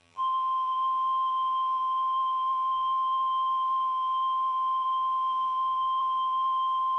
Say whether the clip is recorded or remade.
remade